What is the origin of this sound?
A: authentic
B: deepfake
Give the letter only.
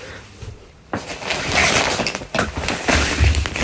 B